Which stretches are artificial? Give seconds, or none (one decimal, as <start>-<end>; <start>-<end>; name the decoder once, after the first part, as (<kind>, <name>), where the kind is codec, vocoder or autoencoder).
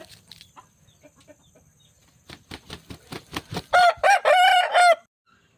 none